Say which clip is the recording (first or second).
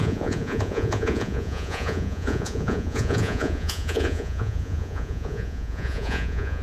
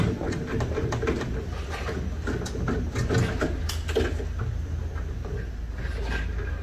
second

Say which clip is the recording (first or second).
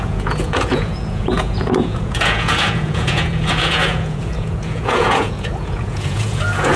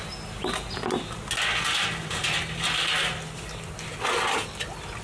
second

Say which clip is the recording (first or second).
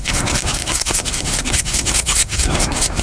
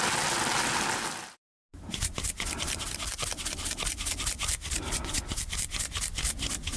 second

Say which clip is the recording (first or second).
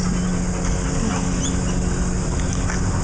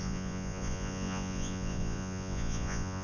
first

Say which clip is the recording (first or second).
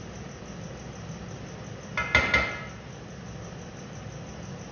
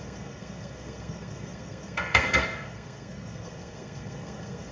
first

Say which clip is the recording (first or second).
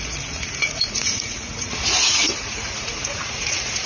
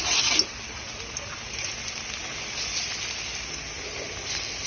second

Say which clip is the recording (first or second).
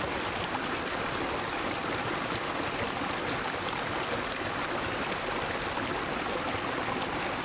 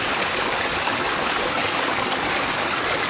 first